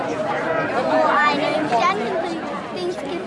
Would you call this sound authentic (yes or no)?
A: yes